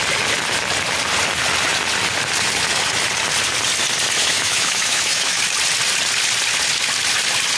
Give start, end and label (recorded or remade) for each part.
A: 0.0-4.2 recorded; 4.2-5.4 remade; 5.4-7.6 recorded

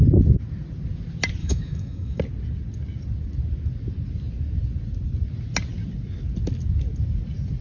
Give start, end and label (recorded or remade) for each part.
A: 0.0-1.4 recorded; 1.4-2.2 remade; 2.2-7.6 recorded